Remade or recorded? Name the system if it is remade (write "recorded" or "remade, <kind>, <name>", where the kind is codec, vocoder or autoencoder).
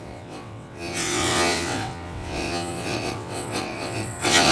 remade, vocoder, WaveNeXt